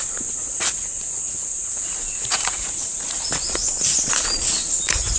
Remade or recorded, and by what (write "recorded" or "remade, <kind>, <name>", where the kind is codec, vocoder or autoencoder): remade, vocoder, Vocos